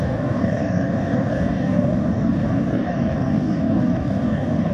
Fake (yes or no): yes